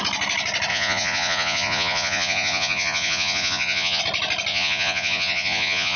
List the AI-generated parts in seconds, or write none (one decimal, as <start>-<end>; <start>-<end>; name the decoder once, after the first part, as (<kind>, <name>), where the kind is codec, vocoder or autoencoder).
0.7-4.0 (vocoder, Vocos); 4.5-6.0